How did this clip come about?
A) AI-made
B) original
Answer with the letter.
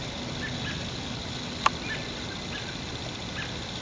B